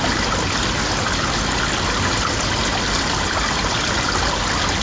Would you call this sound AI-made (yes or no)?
no